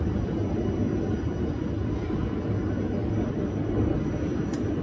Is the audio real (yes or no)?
yes